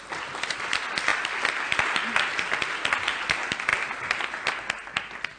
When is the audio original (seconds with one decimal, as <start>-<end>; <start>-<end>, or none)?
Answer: 0.0-5.4